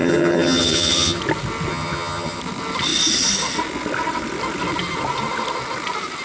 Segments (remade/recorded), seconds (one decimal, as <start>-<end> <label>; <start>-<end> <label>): 0.0-1.2 remade; 1.2-1.7 recorded; 1.7-2.4 remade; 2.4-6.2 recorded